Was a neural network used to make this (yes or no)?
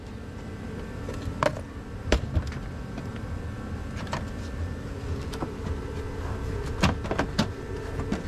no